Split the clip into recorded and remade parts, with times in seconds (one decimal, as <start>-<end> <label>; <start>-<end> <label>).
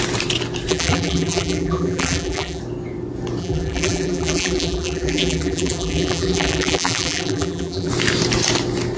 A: 0.0-0.7 recorded; 0.7-2.6 remade; 2.6-3.4 recorded; 3.4-7.9 remade; 7.9-9.0 recorded